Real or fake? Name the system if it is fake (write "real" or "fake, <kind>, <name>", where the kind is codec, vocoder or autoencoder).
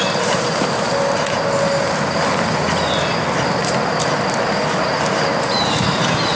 real